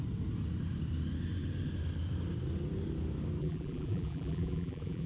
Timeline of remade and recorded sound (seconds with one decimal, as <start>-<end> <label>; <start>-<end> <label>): 0.0-3.4 recorded; 3.4-5.1 remade